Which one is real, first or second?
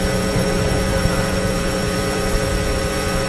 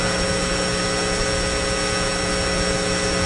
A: second